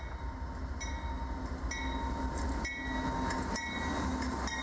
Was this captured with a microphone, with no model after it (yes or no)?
yes